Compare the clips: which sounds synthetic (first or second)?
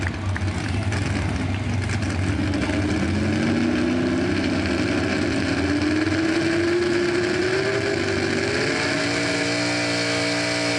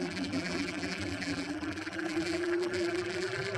second